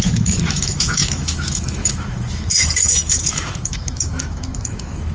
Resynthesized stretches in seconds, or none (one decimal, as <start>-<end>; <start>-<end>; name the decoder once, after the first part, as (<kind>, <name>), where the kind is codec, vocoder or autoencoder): 0.0-5.1 (autoencoder, DAC-VAE)